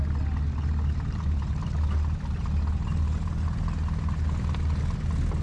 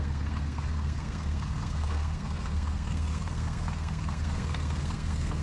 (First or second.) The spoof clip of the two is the second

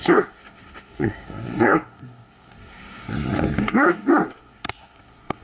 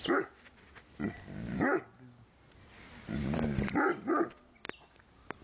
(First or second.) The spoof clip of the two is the first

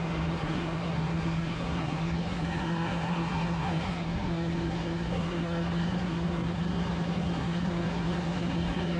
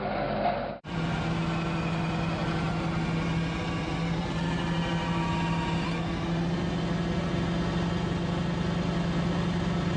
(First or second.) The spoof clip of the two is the first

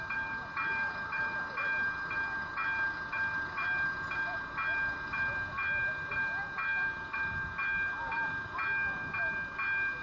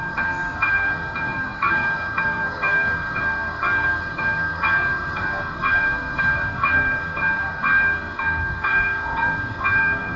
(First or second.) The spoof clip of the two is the second